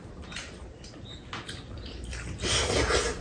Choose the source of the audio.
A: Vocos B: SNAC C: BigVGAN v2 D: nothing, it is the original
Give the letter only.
D